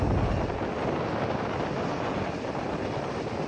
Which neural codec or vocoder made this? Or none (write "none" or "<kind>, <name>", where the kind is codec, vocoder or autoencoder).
none